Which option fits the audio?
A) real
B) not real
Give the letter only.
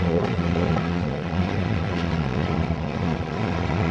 B